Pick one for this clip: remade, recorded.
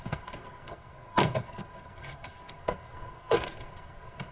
remade